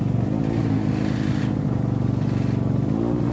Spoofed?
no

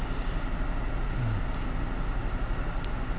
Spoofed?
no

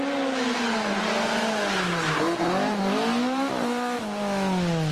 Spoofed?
no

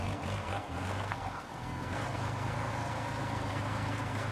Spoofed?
yes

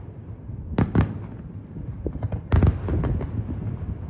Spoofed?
no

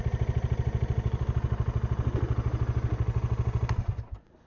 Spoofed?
yes